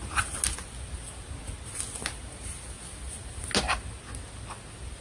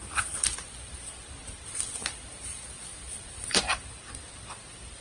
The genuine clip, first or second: first